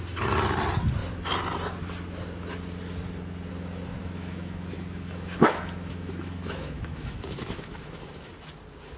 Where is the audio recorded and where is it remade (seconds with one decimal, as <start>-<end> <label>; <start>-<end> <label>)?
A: 0.0-4.0 recorded; 4.0-8.3 remade; 8.3-9.0 recorded